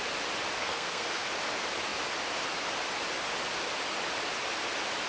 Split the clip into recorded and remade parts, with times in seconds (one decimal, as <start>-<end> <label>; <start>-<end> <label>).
0.0-0.6 recorded; 0.6-1.3 remade; 1.3-5.1 recorded